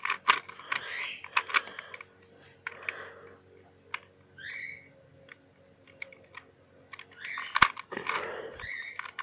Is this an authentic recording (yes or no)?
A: yes